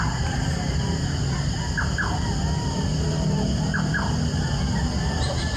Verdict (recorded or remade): recorded